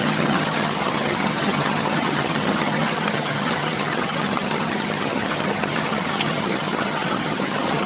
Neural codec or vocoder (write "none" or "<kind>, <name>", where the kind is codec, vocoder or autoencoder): vocoder, HiFi-GAN